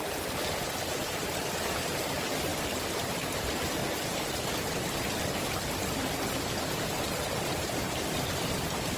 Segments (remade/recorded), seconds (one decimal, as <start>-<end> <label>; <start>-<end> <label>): 0.0-2.5 remade; 2.5-3.2 recorded; 3.2-3.8 remade; 3.8-6.8 recorded; 6.8-9.0 remade